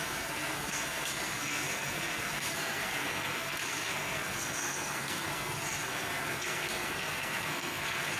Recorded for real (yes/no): no